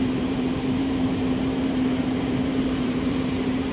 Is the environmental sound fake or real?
fake